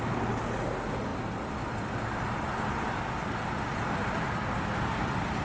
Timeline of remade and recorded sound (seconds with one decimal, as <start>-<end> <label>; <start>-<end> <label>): 0.0-5.4 recorded